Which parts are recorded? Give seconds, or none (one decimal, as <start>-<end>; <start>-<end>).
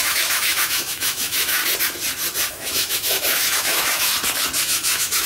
1.6-2.5; 4.1-4.6